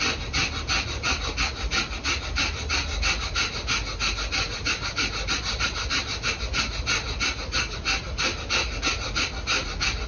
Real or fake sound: real